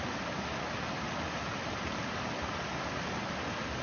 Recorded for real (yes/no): yes